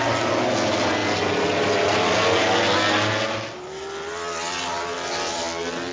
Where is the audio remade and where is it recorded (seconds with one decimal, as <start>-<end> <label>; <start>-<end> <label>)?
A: 0.0-5.9 recorded